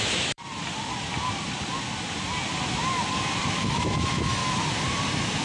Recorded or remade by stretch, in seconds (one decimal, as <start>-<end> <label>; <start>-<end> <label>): 0.0-0.4 remade; 0.4-3.6 recorded; 3.6-4.4 remade; 4.4-5.4 recorded